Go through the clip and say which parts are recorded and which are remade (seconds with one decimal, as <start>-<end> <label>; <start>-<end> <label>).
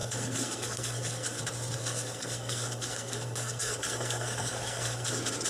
0.0-1.4 remade; 1.4-1.8 recorded; 1.8-5.1 remade; 5.1-5.5 recorded